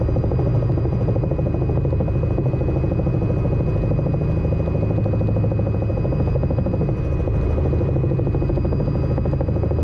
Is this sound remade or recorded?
recorded